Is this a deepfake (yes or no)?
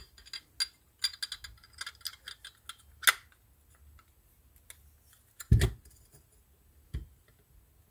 no